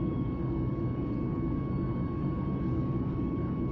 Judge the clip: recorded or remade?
remade